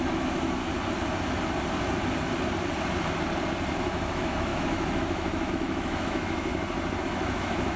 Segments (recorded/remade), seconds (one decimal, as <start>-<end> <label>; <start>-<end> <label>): 0.0-0.6 remade; 0.6-3.7 recorded; 3.7-6.5 remade; 6.5-7.0 recorded; 7.0-7.8 remade